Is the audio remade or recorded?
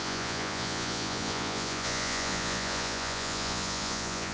remade